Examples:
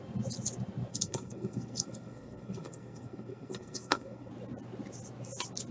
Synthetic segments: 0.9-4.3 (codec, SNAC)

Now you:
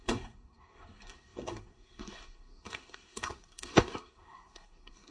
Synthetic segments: 0.0-5.1 (codec, SNAC)

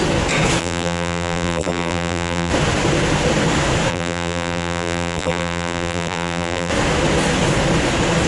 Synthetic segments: 0.6-2.5 (vocoder, BigVGAN v2); 3.9-6.7

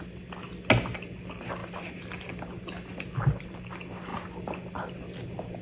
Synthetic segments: none